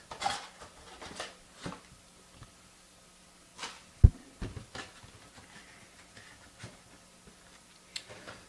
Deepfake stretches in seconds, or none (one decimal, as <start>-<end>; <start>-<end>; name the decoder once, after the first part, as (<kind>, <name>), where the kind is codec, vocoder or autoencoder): none